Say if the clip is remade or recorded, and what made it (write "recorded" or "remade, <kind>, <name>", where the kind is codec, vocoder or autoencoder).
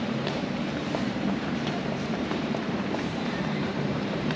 remade, vocoder, BigVGAN v2